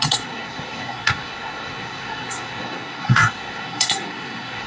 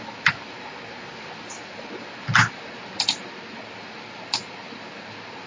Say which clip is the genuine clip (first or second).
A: second